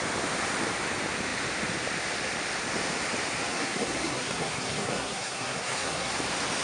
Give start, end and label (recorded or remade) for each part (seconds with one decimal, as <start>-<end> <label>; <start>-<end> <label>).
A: 0.0-3.5 recorded; 3.5-6.1 remade; 6.1-6.6 recorded